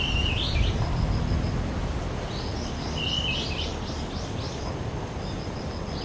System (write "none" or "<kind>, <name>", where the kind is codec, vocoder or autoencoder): none